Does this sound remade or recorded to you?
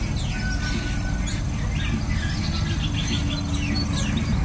recorded